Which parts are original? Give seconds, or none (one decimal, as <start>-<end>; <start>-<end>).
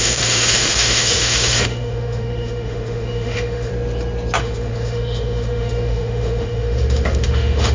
3.7-4.4